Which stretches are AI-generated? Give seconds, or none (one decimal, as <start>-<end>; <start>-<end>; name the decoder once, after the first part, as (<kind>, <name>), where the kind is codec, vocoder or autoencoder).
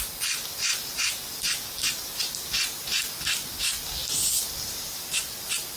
none